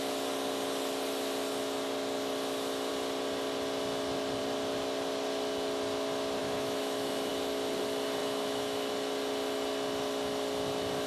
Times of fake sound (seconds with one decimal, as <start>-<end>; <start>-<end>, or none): 6.4-7.3; 8.2-8.9